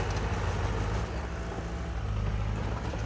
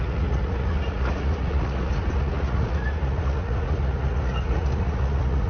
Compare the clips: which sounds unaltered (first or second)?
first